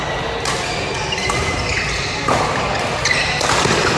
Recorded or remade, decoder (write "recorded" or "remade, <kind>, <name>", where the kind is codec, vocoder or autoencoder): recorded